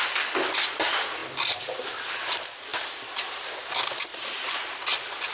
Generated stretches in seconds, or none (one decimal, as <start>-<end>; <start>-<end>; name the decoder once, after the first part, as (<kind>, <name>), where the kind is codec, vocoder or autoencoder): 2.7-3.4 (vocoder, BigVGAN v2); 4.1-4.7